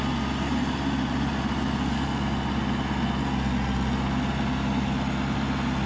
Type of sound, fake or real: real